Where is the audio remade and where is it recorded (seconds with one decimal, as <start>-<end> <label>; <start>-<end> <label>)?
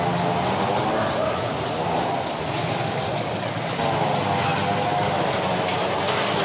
0.0-6.4 recorded